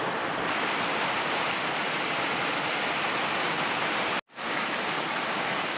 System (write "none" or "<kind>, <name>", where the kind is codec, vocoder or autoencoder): none